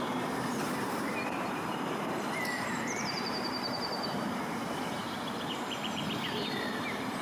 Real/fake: fake